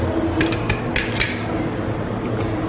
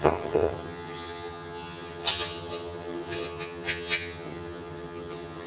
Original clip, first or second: first